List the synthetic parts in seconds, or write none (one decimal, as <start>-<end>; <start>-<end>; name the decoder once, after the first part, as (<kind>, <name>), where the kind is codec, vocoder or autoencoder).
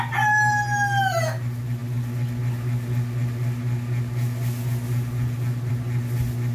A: none